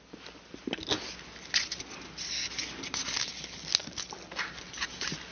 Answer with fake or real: real